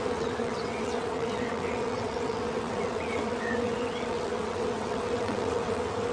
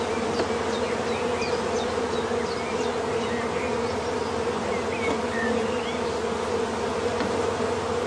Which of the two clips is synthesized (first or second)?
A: first